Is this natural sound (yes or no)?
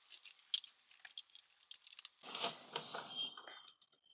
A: yes